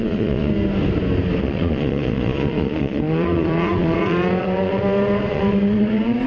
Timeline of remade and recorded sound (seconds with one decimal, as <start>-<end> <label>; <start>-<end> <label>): 0.0-0.5 remade; 0.5-1.4 recorded; 1.4-6.3 remade